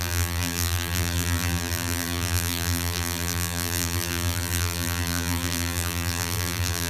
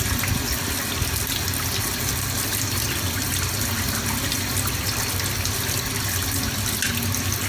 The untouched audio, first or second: second